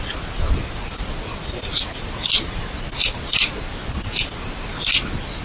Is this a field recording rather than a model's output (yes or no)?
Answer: yes